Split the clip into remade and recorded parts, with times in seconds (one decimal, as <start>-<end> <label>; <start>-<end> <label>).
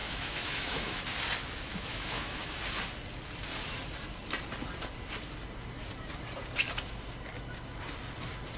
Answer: 0.0-1.0 remade; 1.0-1.7 recorded; 1.7-2.6 remade; 2.6-8.6 recorded